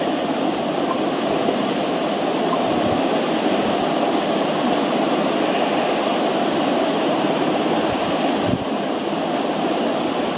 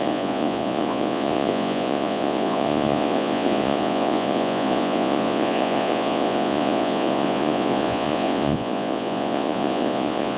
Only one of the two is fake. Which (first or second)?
second